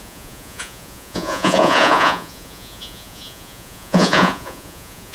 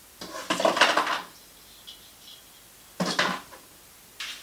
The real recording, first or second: second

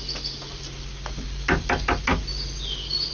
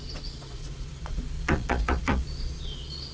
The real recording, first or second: first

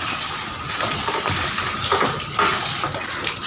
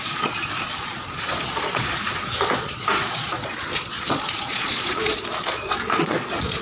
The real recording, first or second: first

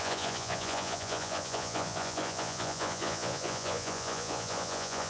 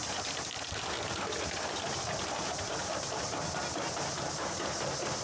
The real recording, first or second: second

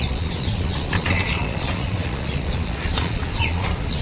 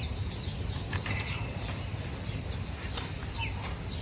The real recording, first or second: second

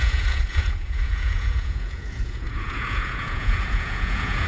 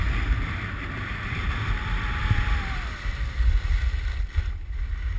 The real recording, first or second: second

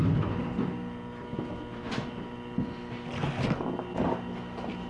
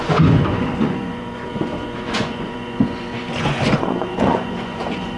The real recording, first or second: first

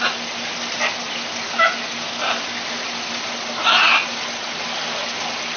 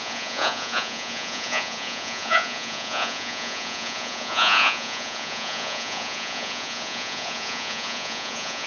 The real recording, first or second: first